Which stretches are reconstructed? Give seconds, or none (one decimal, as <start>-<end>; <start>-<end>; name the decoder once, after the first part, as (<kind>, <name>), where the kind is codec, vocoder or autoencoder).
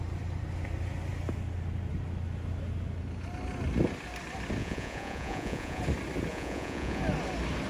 4.6-5.8 (vocoder, Vocos); 6.3-7.0